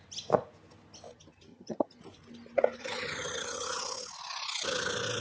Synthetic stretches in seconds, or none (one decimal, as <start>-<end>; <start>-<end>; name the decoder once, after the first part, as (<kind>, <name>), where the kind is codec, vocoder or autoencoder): 1.5-2.0 (vocoder, HiFi-GAN); 2.8-3.8